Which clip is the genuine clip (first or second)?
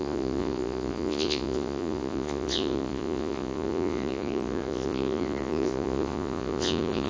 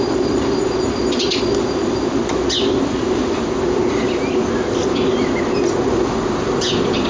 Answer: second